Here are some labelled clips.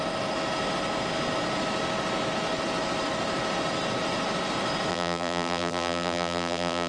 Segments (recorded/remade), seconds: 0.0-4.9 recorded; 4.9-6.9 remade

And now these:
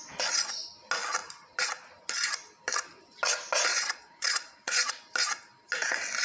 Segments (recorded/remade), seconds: 0.0-3.7 recorded; 3.7-5.0 remade; 5.0-6.2 recorded

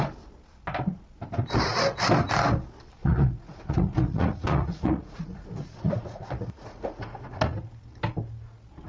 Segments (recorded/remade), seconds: 0.0-3.0 recorded; 3.0-7.4 remade; 7.4-8.9 recorded

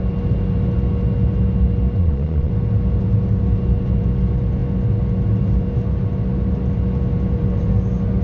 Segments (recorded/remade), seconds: 0.0-2.0 recorded; 2.0-2.5 remade; 2.5-8.2 recorded

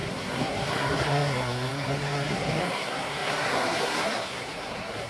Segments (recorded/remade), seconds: 0.0-5.1 remade

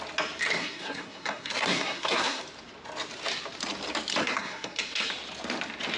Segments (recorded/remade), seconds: 0.0-0.6 recorded; 0.6-2.4 remade; 2.4-4.2 recorded; 4.2-5.1 remade; 5.1-6.0 recorded

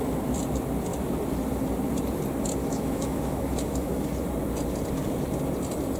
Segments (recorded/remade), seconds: 0.0-2.6 recorded; 2.6-4.1 remade; 4.1-6.0 recorded

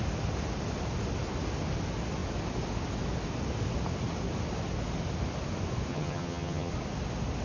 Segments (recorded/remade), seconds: 0.0-5.9 recorded; 5.9-6.7 remade; 6.7-7.4 recorded